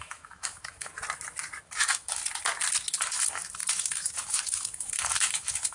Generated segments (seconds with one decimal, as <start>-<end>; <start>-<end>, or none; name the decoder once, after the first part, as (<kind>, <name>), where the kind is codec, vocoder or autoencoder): 0.0-0.9 (autoencoder, DAC-VAE); 1.6-2.2; 3.0-5.7